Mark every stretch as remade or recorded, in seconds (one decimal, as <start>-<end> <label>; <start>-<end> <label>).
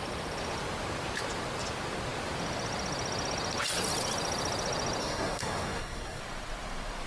0.0-5.0 recorded; 5.0-6.2 remade; 6.2-7.1 recorded